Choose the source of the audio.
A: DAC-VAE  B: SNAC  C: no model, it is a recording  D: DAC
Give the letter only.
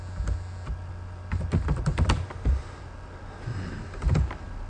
C